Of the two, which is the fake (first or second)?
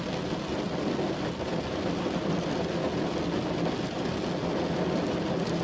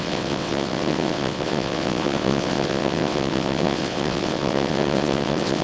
second